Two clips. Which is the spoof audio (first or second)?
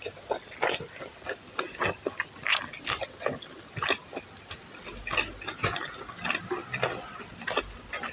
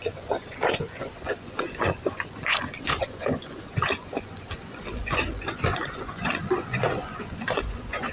second